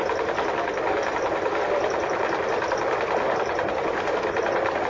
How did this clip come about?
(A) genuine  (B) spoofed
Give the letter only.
A